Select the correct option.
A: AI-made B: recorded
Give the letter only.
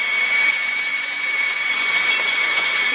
A